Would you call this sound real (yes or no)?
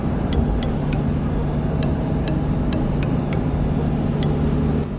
yes